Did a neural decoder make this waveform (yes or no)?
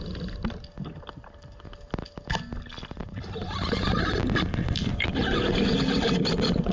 no